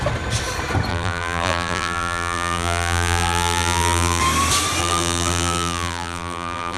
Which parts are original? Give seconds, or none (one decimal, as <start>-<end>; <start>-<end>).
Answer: 0.0-0.9; 4.2-4.8